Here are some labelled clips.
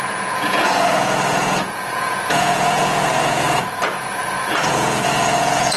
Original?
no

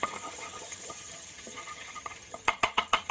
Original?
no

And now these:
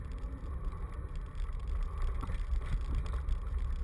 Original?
yes